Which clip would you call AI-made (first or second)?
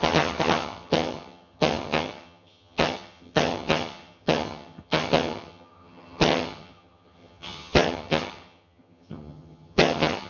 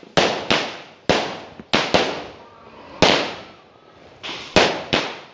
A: first